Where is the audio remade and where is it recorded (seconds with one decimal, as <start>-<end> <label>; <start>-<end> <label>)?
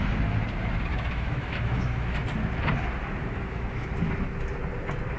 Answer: 0.0-0.9 recorded; 0.9-2.2 remade; 2.2-3.2 recorded; 3.2-3.9 remade; 3.9-5.2 recorded